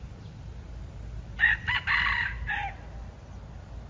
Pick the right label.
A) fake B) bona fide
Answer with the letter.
B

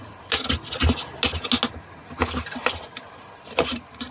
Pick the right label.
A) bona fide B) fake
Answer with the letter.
A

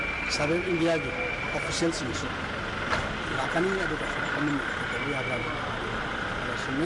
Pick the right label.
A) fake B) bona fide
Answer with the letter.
B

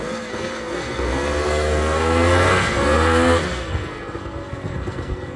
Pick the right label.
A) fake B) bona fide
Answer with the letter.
A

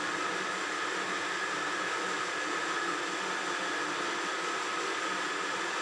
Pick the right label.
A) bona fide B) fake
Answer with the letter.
A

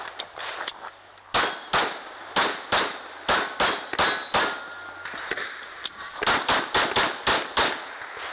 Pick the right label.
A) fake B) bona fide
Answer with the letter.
B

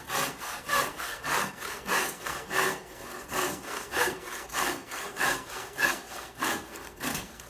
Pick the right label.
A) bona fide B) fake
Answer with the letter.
B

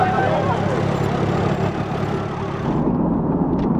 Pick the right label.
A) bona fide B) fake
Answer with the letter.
A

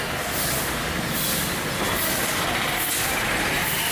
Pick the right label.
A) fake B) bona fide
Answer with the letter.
B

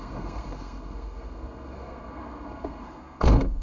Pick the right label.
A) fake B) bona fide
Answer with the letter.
A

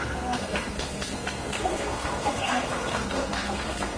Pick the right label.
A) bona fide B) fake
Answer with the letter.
B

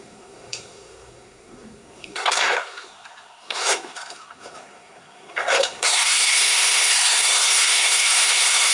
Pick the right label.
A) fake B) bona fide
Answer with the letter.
A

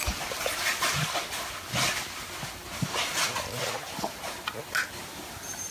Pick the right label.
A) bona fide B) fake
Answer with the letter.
A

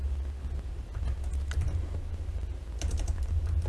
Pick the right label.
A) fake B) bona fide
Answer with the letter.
B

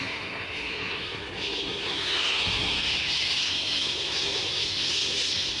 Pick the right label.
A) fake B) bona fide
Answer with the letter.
A